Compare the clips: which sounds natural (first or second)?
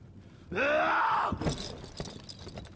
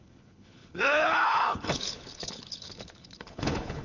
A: first